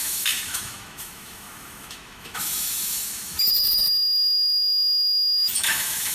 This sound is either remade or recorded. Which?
remade